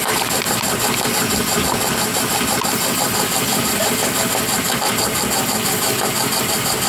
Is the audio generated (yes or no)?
no